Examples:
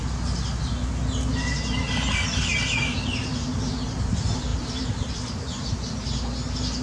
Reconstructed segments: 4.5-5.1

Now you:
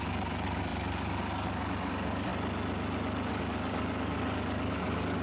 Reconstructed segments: 0.0-2.3; 3.3-5.2